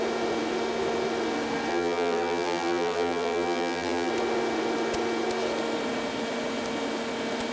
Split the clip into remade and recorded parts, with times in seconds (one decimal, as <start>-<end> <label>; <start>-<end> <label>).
0.0-1.7 recorded; 1.7-4.1 remade; 4.1-7.5 recorded